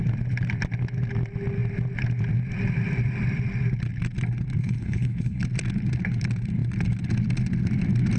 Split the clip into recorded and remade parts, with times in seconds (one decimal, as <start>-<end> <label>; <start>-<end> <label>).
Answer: 0.0-4.6 recorded; 4.6-5.4 remade; 5.4-8.2 recorded